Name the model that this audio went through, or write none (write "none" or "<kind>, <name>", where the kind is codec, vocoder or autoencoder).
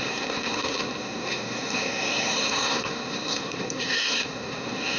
codec, SNAC